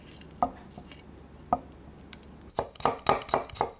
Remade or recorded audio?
recorded